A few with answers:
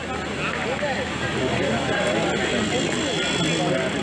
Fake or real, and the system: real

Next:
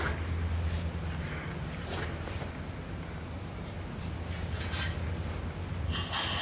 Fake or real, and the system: real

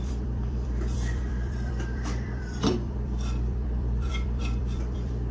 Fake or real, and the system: fake, vocoder, BigVGAN v2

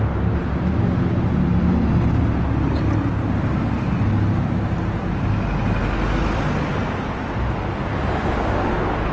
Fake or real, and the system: real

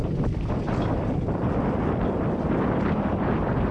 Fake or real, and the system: fake, vocoder, BigVGAN v2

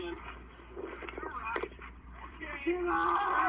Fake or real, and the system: fake, vocoder, BigVGAN v2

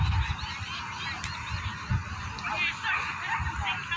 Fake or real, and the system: real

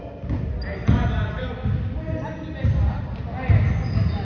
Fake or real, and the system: real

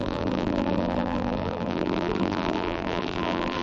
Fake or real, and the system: fake, vocoder, BigVGAN v2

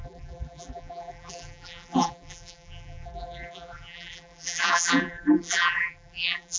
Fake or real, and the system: fake, vocoder, BigVGAN v2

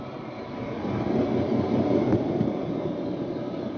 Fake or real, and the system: fake, vocoder, BigVGAN v2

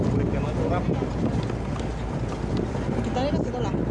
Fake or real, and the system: real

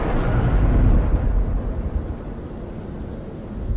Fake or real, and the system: real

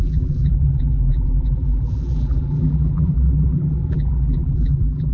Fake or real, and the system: fake, vocoder, BigVGAN v2